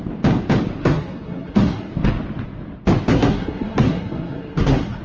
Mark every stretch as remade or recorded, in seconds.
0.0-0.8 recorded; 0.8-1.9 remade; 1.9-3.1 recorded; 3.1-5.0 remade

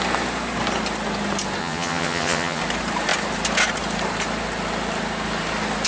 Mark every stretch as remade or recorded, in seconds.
0.0-1.6 recorded; 1.6-2.6 remade; 2.6-5.9 recorded

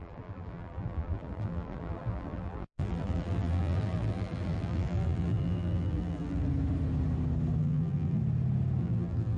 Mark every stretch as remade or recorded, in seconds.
0.0-6.5 remade; 6.5-7.6 recorded; 7.6-8.2 remade; 8.2-8.8 recorded; 8.8-9.4 remade